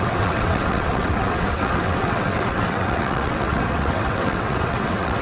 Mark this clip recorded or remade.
remade